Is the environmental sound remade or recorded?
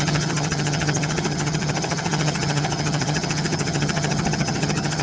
remade